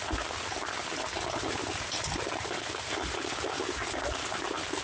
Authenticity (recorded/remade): recorded